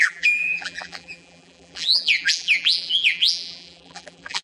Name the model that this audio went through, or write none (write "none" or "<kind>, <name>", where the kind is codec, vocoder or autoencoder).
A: vocoder, BigVGAN v2